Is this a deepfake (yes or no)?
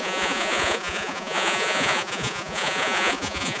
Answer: yes